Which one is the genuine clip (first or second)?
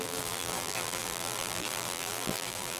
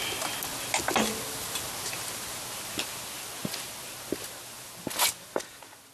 second